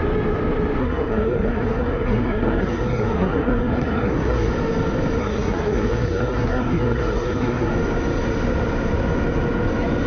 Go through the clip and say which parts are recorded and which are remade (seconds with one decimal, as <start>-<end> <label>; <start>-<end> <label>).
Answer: 0.0-0.8 recorded; 0.8-4.5 remade; 4.5-5.2 recorded; 5.2-7.7 remade; 7.7-10.1 recorded